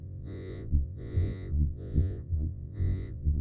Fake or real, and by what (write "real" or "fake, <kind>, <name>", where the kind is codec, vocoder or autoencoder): fake, vocoder, Vocos